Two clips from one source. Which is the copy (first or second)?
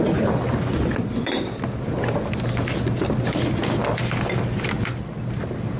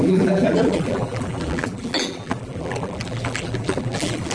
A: second